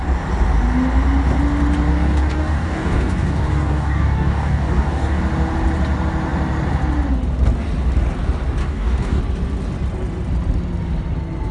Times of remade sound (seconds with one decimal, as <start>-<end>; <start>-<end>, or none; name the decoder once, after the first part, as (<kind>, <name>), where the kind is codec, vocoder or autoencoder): 1.9-5.2 (codec, DAC); 8.6-9.2